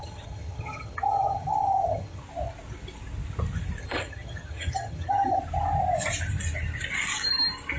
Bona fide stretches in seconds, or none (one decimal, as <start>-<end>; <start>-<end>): 2.2-3.8; 5.4-7.8